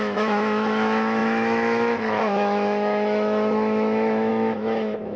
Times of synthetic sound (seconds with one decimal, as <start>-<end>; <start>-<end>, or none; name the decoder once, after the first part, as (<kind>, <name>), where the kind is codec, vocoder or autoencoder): 0.0-5.2 (autoencoder, DAC-VAE)